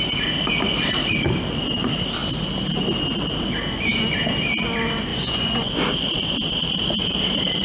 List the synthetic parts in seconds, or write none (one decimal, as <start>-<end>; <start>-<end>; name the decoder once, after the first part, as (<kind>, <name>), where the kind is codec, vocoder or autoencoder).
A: 5.1-5.7 (vocoder, Vocos)